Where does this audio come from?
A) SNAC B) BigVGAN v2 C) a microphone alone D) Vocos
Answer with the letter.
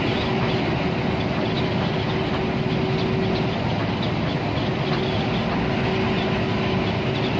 C